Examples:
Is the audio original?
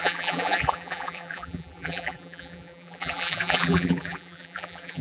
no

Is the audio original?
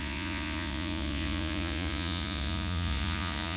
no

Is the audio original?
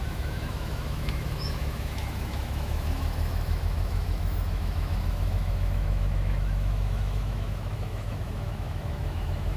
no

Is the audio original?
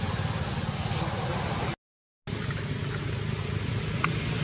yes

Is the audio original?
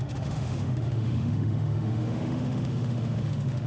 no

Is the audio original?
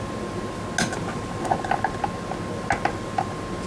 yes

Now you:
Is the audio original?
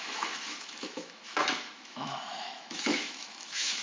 no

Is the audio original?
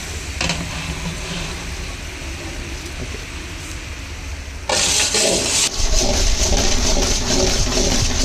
yes